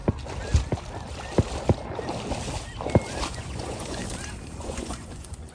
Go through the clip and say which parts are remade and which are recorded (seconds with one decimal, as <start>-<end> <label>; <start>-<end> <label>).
0.0-3.3 recorded; 3.3-4.0 remade; 4.0-4.6 recorded; 4.6-5.5 remade